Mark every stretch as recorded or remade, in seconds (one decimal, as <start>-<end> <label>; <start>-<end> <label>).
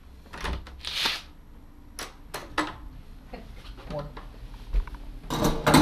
0.0-5.8 recorded